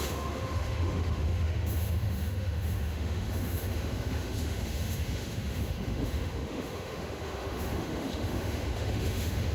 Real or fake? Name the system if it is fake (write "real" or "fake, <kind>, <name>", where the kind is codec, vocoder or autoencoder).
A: fake, autoencoder, DAC-VAE